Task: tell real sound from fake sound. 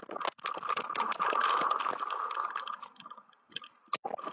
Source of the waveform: real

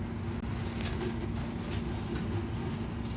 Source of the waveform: real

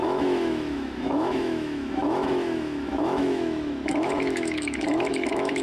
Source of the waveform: fake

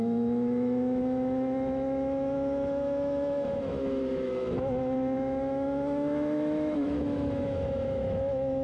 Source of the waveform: fake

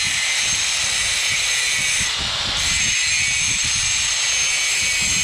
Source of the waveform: real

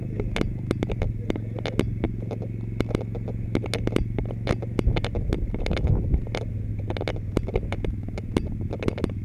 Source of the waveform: real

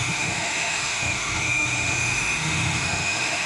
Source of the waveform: fake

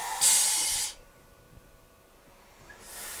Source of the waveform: real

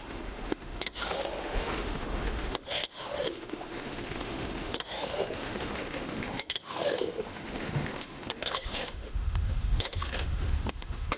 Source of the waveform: fake